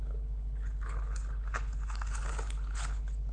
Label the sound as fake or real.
fake